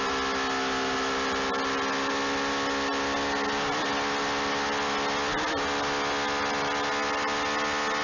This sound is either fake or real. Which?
real